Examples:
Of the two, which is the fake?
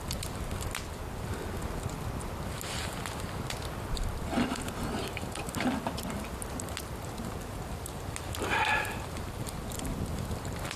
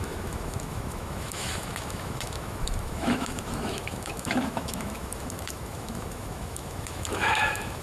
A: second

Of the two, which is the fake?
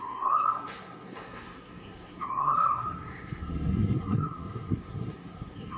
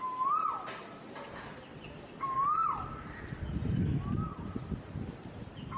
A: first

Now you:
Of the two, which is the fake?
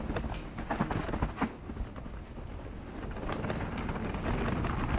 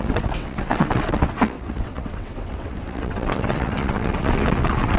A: second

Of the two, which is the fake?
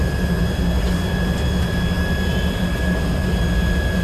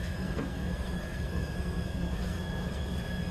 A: second